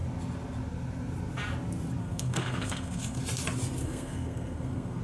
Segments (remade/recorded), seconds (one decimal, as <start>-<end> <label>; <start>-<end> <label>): 0.0-2.0 recorded; 2.0-3.2 remade; 3.2-3.8 recorded; 3.8-5.0 remade

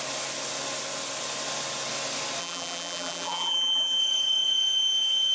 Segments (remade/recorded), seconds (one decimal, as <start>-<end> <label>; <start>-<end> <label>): 0.0-2.4 recorded; 2.4-4.0 remade; 4.0-5.3 recorded

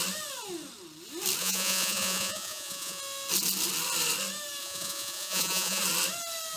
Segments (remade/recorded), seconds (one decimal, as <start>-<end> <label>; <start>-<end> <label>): 0.0-1.4 recorded; 1.4-3.0 remade; 3.0-4.6 recorded; 4.6-5.8 remade; 5.8-6.6 recorded

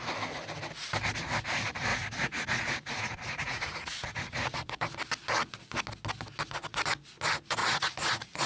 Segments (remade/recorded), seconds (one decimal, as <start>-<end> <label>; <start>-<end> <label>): 0.0-1.9 recorded; 1.9-4.7 remade; 4.7-7.6 recorded; 7.6-8.5 remade

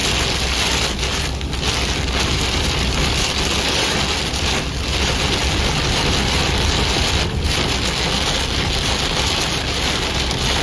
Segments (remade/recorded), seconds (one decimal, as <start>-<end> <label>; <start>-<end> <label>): 0.0-10.6 recorded

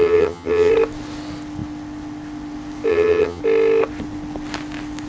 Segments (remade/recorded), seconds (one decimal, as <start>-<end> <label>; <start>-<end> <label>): 0.0-0.7 remade; 0.7-2.9 recorded; 2.9-3.4 remade; 3.4-5.1 recorded

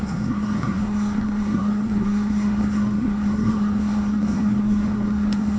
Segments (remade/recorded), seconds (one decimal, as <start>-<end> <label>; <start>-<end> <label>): 0.0-5.6 remade